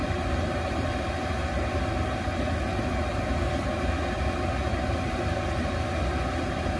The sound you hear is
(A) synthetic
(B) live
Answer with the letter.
B